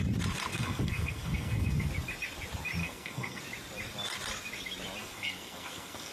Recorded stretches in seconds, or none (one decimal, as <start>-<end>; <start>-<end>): 0.0-0.5; 1.9-2.8; 3.4-5.0